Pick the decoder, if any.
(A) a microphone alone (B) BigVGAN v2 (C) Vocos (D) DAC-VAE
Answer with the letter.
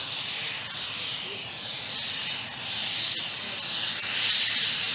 B